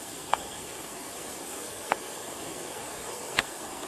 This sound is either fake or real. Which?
fake